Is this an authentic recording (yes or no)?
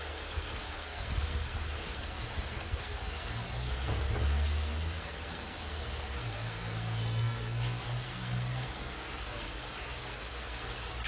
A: no